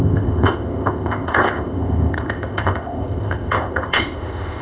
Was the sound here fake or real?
fake